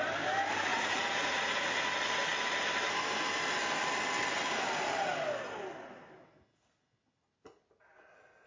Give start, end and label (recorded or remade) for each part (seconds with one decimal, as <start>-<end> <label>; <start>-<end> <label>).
0.0-0.7 recorded; 0.7-1.9 remade; 1.9-8.5 recorded